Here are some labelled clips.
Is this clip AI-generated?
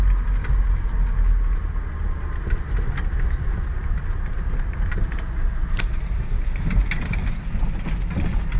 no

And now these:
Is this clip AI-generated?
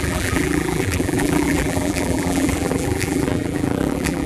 yes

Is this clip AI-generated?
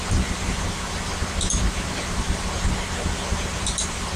yes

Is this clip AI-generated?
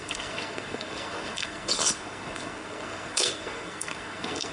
yes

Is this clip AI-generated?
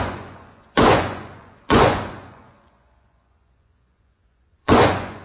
yes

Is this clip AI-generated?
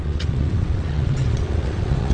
yes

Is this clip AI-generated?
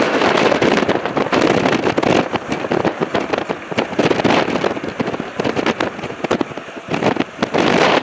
no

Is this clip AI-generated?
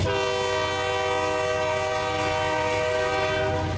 no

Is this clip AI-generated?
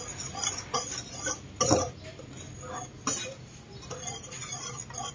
no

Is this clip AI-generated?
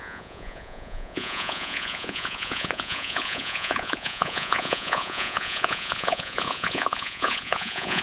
yes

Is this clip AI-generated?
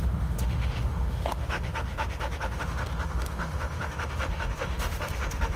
yes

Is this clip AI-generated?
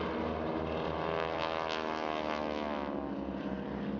no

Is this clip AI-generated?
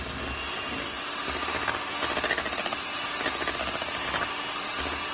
no